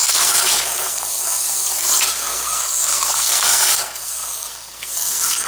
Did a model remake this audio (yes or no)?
yes